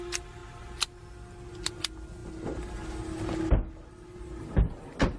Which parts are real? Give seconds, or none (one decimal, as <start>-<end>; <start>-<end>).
0.0-5.2